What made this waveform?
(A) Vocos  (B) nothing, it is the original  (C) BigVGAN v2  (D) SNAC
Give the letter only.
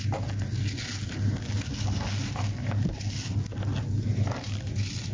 B